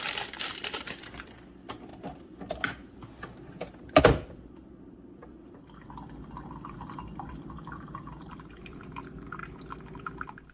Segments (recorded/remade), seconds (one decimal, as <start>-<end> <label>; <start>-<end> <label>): 0.0-9.4 remade; 9.4-10.0 recorded; 10.0-10.5 remade